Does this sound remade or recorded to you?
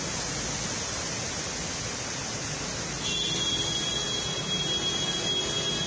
recorded